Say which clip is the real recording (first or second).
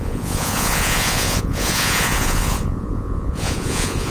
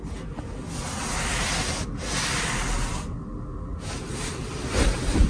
second